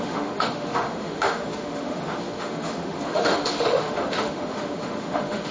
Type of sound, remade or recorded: remade